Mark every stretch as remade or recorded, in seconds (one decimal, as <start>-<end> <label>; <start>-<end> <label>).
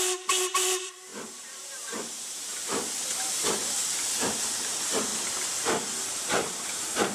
0.0-3.8 remade; 3.8-4.3 recorded; 4.3-5.1 remade; 5.1-6.0 recorded; 6.0-7.1 remade